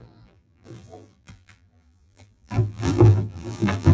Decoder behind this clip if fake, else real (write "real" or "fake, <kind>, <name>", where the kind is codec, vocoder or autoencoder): fake, vocoder, BigVGAN v2